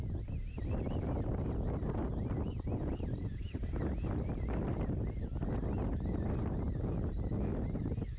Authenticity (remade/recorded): recorded